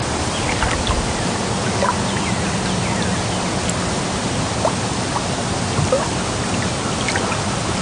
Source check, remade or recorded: recorded